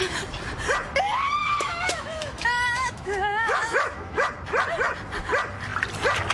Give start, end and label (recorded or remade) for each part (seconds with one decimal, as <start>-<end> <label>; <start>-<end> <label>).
0.0-1.4 recorded; 1.4-4.3 remade; 4.3-6.3 recorded